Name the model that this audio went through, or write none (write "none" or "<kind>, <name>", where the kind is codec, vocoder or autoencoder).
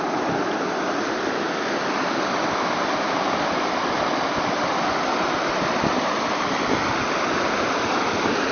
none